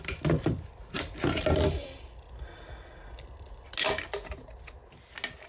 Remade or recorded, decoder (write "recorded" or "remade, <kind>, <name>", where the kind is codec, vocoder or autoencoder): recorded